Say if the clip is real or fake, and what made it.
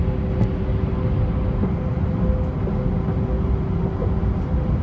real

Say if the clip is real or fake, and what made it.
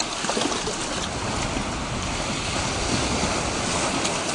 real